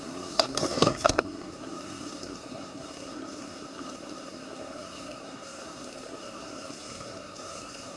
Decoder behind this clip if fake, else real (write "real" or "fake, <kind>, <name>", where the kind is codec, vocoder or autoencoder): fake, codec, SNAC